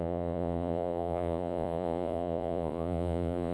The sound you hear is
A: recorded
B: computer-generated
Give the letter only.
B